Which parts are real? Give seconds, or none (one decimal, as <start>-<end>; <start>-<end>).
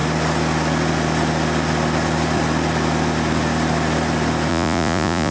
0.0-4.5